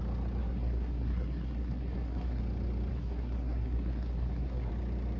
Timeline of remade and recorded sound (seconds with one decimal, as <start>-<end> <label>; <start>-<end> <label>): 0.0-0.4 recorded; 0.4-2.4 remade; 2.4-2.9 recorded; 2.9-4.7 remade; 4.7-5.2 recorded